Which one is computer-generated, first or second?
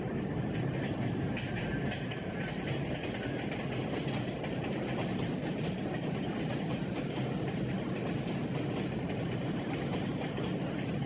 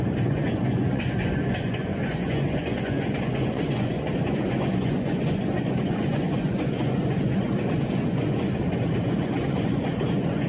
second